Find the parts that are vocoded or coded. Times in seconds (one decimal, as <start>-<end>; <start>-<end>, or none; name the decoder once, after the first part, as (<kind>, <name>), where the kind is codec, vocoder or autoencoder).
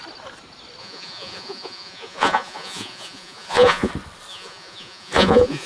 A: 0.8-3.9 (vocoder, Vocos); 4.3-5.7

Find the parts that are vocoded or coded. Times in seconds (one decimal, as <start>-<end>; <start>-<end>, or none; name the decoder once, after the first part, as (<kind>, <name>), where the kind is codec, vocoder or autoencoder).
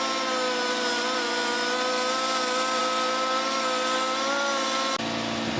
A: none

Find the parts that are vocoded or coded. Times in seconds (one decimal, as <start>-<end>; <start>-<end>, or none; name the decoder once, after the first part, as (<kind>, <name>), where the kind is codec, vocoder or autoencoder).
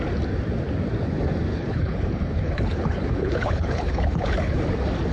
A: 1.5-4.6 (codec, HILCodec)